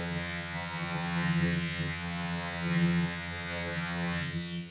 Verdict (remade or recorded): remade